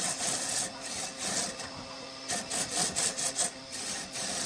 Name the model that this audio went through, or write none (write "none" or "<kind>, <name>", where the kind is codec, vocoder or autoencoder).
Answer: none